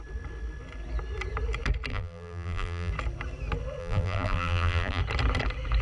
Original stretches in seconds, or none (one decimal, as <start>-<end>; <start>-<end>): 0.0-1.9; 2.9-3.8; 5.0-5.8